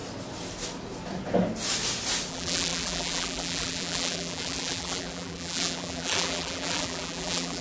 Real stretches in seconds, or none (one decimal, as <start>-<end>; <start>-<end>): 0.0-2.3